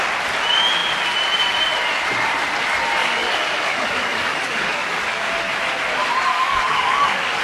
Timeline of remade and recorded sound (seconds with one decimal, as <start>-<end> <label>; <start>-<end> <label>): 0.0-3.0 recorded; 3.0-5.3 remade; 5.3-6.3 recorded; 6.3-7.4 remade